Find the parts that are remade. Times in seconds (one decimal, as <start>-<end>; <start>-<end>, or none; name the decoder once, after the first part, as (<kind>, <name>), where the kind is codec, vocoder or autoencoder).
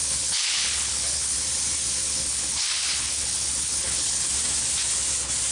0.0-1.4 (codec, HILCodec); 2.0-4.3